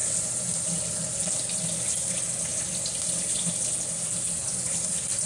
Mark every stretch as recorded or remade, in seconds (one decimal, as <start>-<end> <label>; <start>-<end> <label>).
0.0-5.3 recorded